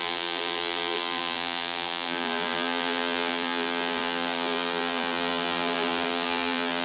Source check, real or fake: fake